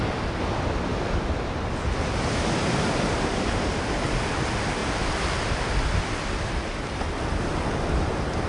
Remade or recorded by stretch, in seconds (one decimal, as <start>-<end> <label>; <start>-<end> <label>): 0.0-8.5 recorded